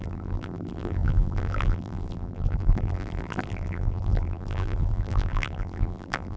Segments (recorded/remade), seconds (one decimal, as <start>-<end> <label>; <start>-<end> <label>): 0.0-6.4 remade